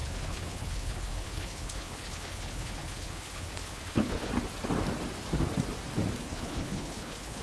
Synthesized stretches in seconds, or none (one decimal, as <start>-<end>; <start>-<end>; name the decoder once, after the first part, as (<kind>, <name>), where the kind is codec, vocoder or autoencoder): 0.0-4.3 (codec, HILCodec); 6.2-7.4